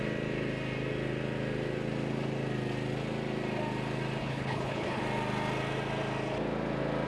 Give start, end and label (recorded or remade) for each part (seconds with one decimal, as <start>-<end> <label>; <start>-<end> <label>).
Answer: 0.0-4.2 recorded; 4.2-5.0 remade; 5.0-7.1 recorded